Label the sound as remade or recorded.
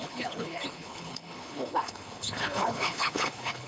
remade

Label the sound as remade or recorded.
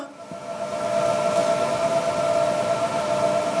recorded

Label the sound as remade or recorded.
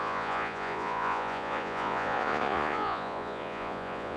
remade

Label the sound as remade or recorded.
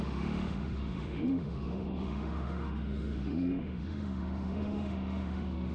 remade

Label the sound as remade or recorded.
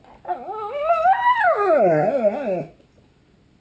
recorded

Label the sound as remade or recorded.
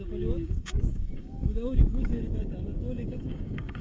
remade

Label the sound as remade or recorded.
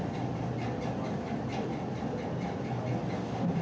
recorded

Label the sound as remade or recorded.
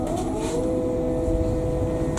recorded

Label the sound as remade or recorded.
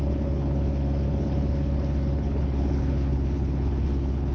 remade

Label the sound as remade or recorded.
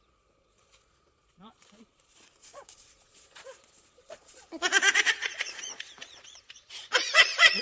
remade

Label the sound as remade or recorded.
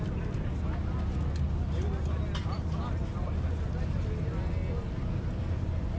recorded